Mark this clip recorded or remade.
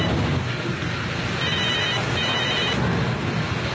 recorded